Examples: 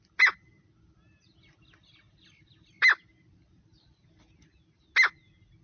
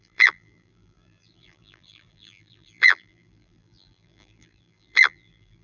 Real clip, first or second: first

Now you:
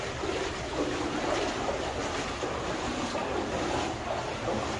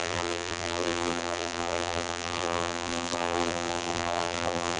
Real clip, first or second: first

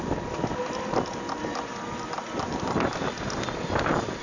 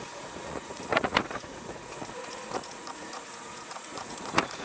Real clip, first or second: first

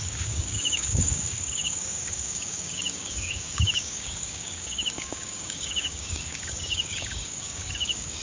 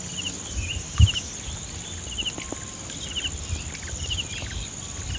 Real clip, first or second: second